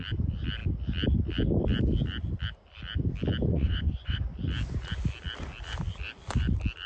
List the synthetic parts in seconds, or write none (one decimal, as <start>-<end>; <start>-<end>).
3.5-4.2